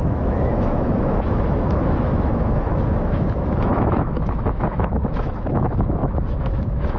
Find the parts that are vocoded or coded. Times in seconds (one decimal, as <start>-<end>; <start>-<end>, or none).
0.0-7.0